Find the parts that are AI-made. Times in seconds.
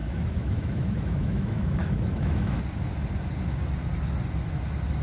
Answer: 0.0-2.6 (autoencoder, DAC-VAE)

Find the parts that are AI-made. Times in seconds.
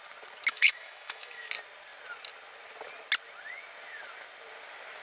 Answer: 0.5-1.5 (autoencoder, DAC-VAE)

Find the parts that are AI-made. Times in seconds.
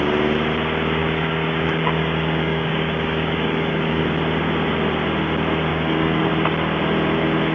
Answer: 1.0-4.0 (codec, DAC); 5.7-6.3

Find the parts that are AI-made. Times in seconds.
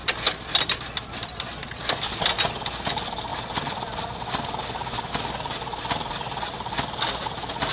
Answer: none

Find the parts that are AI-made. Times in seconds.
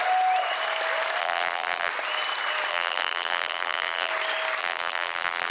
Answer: 1.2-1.9 (vocoder, BigVGAN v2); 2.7-4.1; 4.6-5.5